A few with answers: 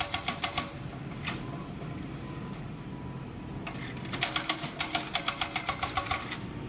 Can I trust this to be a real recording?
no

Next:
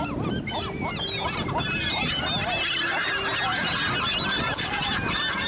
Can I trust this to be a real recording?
yes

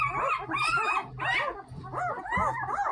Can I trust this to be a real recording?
yes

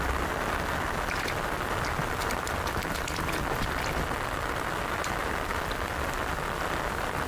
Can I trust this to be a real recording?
yes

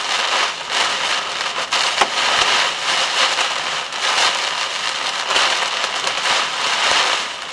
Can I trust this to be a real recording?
yes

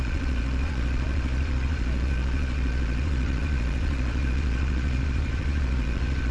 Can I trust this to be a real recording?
no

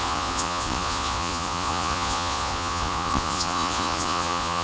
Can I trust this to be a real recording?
no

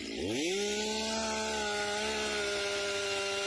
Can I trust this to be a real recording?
yes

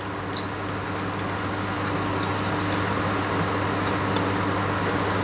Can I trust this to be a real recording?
yes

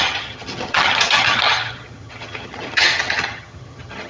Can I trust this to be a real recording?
no